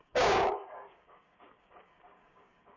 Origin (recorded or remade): remade